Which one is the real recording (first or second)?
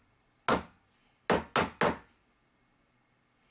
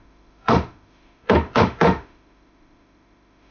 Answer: first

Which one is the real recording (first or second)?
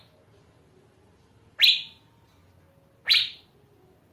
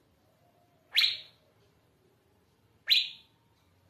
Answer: first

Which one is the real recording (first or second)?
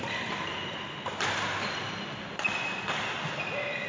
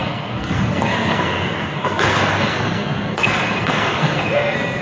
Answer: first